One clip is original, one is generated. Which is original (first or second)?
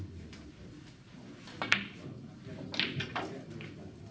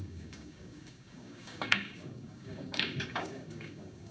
first